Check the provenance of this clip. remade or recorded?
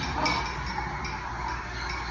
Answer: recorded